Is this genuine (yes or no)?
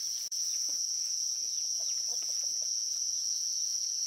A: no